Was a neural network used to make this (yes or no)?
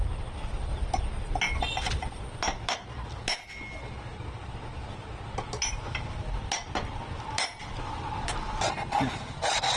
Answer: no